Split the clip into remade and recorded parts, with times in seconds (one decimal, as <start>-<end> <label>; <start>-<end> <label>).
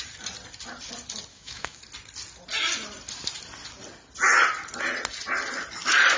0.0-1.3 recorded; 1.3-1.8 remade; 1.8-6.2 recorded